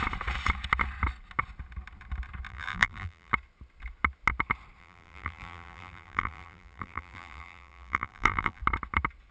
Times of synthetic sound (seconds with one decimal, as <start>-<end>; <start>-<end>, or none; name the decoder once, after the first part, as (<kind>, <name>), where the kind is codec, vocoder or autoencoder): 2.5-3.3 (vocoder, BigVGAN v2); 4.8-8.6